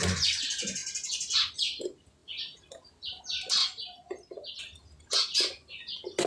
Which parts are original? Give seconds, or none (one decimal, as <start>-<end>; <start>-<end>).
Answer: 0.0-6.3